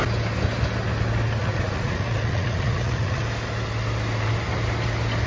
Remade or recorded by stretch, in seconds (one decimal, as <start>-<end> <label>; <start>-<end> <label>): 0.0-1.4 recorded; 1.4-3.2 remade; 3.2-5.3 recorded